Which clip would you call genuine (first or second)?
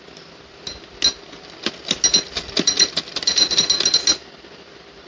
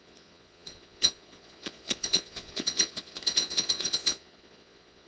first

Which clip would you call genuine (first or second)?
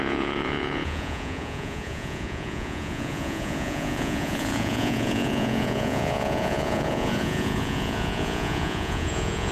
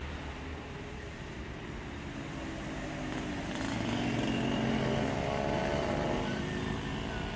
second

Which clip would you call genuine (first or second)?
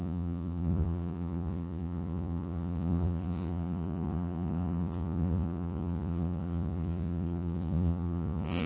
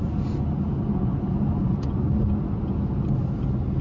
second